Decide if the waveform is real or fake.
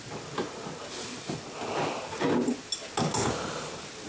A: real